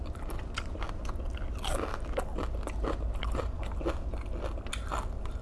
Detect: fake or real real